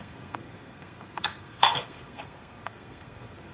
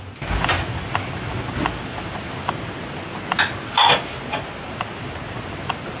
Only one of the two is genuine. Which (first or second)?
second